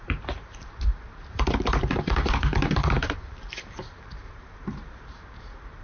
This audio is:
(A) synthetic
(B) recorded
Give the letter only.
A